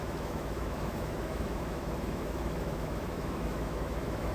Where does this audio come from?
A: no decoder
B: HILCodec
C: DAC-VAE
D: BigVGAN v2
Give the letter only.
C